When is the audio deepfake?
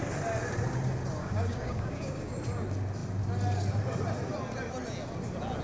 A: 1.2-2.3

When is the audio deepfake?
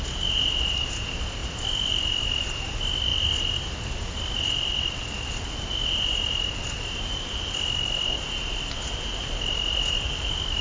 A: none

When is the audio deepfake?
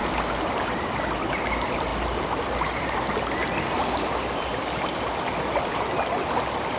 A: none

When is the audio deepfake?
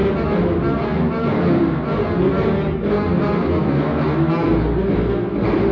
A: none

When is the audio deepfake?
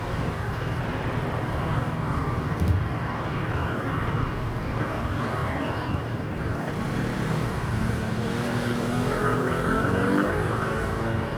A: 0.0-0.8; 1.4-6.7; 7.3-11.4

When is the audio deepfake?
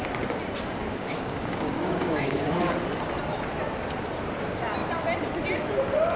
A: 0.8-2.5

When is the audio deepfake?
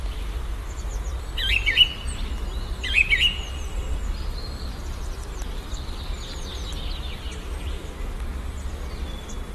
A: none